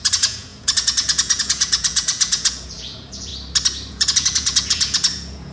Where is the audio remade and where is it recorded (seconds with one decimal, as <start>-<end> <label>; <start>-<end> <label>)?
0.0-3.3 remade; 3.3-3.9 recorded; 3.9-5.5 remade